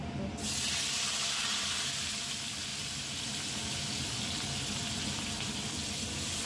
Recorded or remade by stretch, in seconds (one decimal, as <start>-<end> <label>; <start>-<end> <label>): 0.0-6.5 recorded